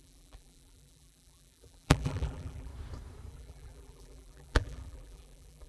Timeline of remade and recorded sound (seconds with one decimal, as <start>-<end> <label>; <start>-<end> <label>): 0.0-2.7 remade; 2.7-3.3 recorded; 3.3-5.7 remade